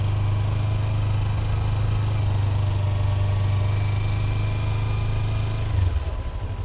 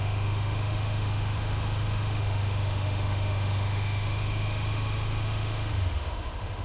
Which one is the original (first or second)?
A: first